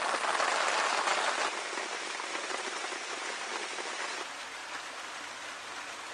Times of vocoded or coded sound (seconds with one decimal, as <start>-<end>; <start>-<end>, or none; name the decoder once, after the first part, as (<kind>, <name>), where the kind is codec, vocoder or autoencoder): none